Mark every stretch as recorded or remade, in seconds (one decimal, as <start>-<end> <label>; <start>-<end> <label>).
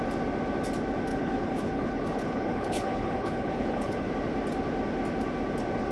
0.0-1.1 recorded; 1.1-4.1 remade; 4.1-5.9 recorded